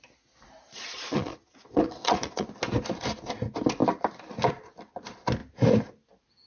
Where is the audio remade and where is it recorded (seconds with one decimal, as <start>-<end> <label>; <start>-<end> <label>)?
0.0-0.6 recorded; 0.6-2.5 remade; 2.5-6.5 recorded